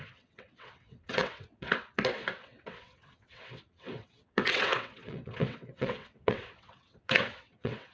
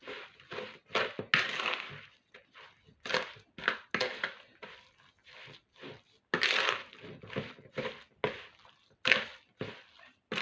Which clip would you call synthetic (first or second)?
first